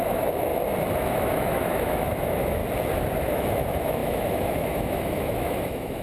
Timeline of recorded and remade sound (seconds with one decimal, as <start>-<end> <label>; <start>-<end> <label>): 0.0-0.5 remade; 0.5-1.1 recorded; 1.1-2.6 remade; 2.6-3.3 recorded; 3.3-6.0 remade